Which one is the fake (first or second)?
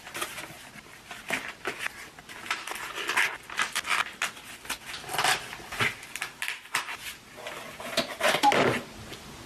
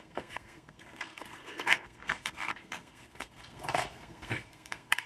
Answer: second